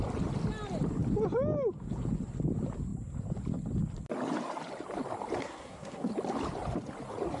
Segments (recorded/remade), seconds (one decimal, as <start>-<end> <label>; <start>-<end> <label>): 0.0-5.4 recorded; 5.4-6.1 remade; 6.1-7.4 recorded